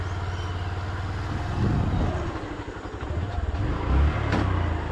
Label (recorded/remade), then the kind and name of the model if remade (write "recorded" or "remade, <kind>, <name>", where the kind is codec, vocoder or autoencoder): recorded